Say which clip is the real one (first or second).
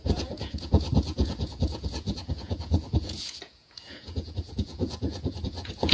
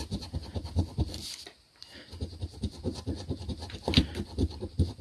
second